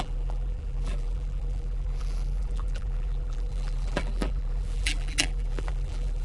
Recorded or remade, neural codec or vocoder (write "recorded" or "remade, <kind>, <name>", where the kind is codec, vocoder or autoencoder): remade, vocoder, BigVGAN v2